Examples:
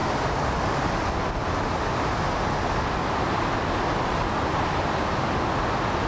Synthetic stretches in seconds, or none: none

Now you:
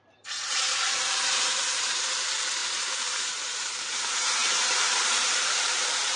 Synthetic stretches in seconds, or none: 0.0-6.2

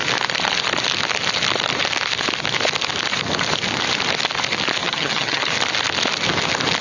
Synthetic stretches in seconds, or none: 4.8-5.4

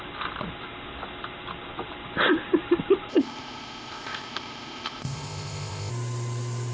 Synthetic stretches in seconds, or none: 3.1-5.9

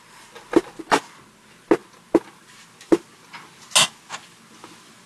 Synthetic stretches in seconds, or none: none